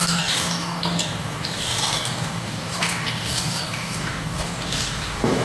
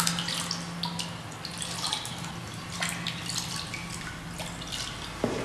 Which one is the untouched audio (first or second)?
second